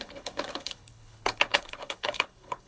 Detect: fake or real fake